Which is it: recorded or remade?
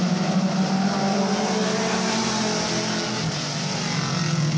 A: recorded